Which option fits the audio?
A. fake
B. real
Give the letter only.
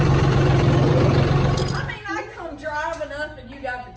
B